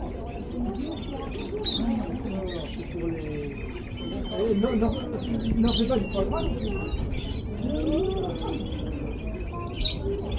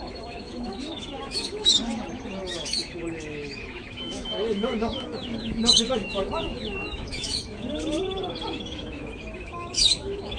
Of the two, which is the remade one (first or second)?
second